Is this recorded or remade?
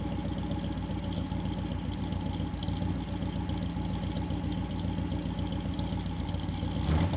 recorded